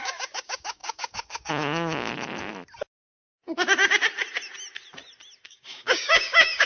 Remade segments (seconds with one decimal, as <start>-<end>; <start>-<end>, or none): 0.0-2.1; 5.4-6.7